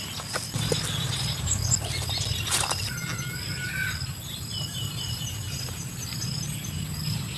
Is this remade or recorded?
recorded